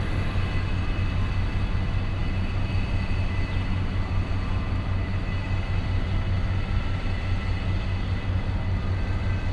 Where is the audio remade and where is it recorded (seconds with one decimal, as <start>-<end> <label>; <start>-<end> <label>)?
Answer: 0.0-9.5 recorded